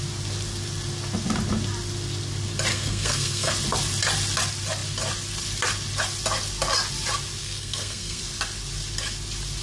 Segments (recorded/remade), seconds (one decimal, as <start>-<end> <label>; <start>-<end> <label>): 0.0-2.7 recorded; 2.7-3.5 remade; 3.5-7.4 recorded; 7.4-8.2 remade; 8.2-9.6 recorded